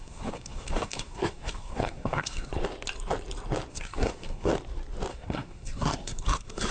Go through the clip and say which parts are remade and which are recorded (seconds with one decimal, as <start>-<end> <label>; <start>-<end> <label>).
0.0-2.5 remade; 2.5-3.7 recorded; 3.7-4.5 remade; 4.5-5.1 recorded; 5.1-6.7 remade

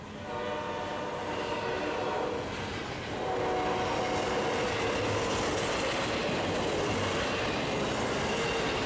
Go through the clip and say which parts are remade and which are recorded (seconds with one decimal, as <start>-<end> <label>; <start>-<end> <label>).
0.0-8.9 recorded

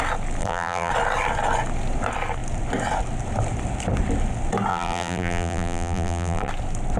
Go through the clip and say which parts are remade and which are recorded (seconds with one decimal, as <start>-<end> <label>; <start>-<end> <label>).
0.0-0.4 recorded; 0.4-0.9 remade; 0.9-4.7 recorded; 4.7-6.5 remade; 6.5-7.0 recorded

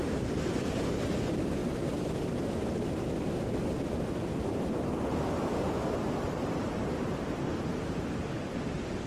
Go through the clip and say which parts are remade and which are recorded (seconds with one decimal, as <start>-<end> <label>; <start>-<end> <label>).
0.0-9.1 recorded

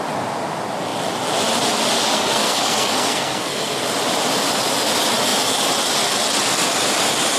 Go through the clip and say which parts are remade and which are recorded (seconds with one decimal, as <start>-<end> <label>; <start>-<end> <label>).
0.0-2.1 recorded; 2.1-3.8 remade; 3.8-7.4 recorded